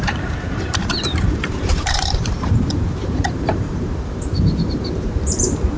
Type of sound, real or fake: fake